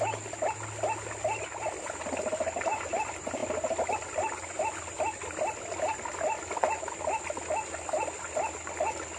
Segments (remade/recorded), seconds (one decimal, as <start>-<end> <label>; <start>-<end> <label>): 0.0-3.4 recorded; 3.4-3.9 remade; 3.9-9.2 recorded

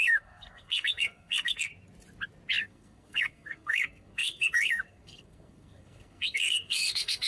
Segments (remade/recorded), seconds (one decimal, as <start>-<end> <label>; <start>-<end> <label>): 0.0-1.7 remade; 1.7-2.6 recorded; 2.6-7.3 remade

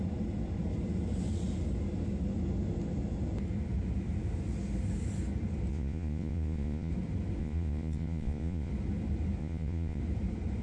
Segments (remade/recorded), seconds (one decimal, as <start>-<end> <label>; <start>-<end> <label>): 0.0-5.7 recorded; 5.7-6.9 remade; 6.9-7.4 recorded; 7.4-8.7 remade; 8.7-9.4 recorded; 9.4-10.0 remade; 10.0-10.6 recorded

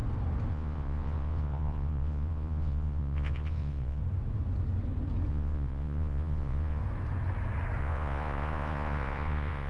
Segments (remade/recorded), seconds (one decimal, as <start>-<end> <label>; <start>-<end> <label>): 0.0-0.5 recorded; 0.5-4.0 remade; 4.0-5.3 recorded; 5.3-6.8 remade; 6.8-7.8 recorded; 7.8-9.7 remade

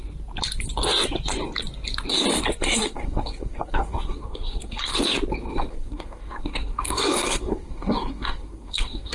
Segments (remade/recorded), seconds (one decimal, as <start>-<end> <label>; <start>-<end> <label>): 0.0-2.6 recorded; 2.6-4.9 remade; 4.9-5.7 recorded; 5.7-9.1 remade

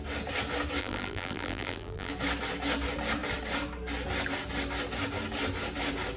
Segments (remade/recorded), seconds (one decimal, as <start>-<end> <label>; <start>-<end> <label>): 0.0-0.8 recorded; 0.8-2.1 remade; 2.1-6.2 recorded

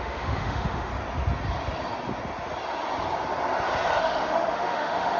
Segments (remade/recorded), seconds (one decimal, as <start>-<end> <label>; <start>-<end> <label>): 0.0-0.9 remade; 0.9-4.0 recorded; 4.0-5.2 remade